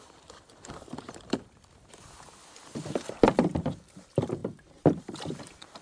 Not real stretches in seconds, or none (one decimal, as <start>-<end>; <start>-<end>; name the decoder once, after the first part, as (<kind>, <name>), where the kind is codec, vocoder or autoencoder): 0.0-4.4 (vocoder, BigVGAN v2); 5.0-5.8

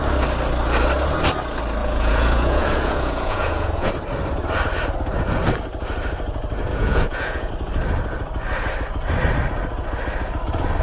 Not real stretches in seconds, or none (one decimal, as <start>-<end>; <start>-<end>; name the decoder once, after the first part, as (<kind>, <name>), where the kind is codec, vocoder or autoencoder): 1.8-3.9 (vocoder, Vocos); 6.7-7.5

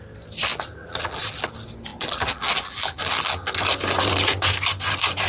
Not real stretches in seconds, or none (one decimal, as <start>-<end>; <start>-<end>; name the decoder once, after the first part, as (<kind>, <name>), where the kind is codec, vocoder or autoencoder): 0.5-1.5 (vocoder, BigVGAN v2); 1.9-3.4

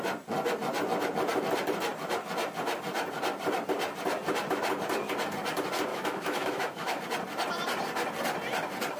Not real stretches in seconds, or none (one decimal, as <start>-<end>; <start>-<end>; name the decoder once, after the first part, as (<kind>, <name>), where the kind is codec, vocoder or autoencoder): 5.9-7.0 (autoencoder, DAC-VAE)

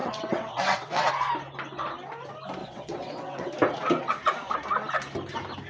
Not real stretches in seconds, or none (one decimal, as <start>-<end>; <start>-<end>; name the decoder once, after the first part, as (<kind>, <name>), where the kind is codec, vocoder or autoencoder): 0.0-1.1 (vocoder, WaveNeXt); 2.6-3.5

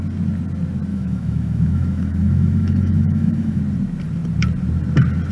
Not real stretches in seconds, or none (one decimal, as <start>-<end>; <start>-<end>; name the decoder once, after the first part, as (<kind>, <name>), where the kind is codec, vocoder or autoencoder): 0.9-3.6 (autoencoder, DAC-VAE)

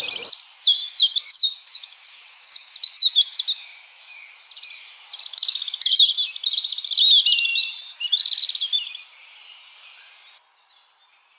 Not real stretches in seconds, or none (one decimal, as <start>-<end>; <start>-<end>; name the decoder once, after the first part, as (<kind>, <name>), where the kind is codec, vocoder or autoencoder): 1.1-4.2 (autoencoder, DAC-VAE); 5.3-6.1